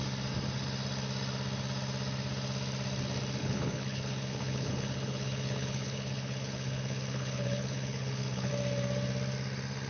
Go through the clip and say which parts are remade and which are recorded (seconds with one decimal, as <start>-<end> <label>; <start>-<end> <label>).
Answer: 0.0-3.4 recorded; 3.4-8.5 remade; 8.5-9.9 recorded